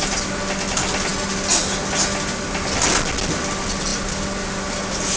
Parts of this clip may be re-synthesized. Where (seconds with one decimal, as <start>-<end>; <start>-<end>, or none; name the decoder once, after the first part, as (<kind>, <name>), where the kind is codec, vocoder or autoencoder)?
none